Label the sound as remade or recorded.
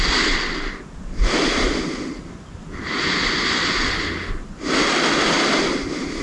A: recorded